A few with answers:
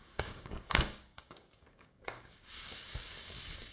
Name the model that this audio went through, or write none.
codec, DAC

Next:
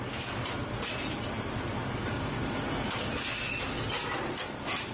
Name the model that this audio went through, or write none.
none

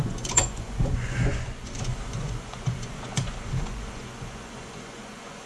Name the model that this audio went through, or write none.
vocoder, Vocos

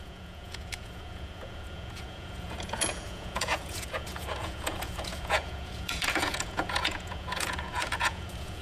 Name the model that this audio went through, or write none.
vocoder, Vocos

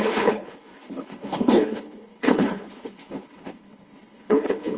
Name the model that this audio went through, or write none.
codec, HILCodec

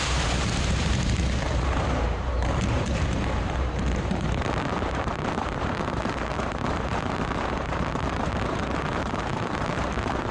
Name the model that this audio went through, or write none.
vocoder, BigVGAN v2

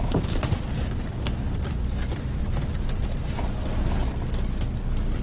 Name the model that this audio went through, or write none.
none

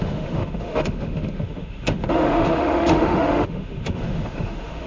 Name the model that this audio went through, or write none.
autoencoder, DAC-VAE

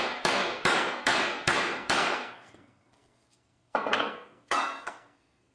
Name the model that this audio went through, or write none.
codec, SNAC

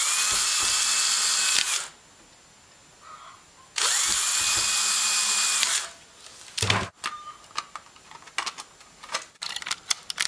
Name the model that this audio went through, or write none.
none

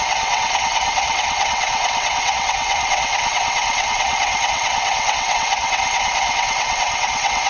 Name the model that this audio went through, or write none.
vocoder, WaveNeXt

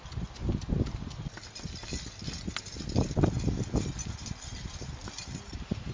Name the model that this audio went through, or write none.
none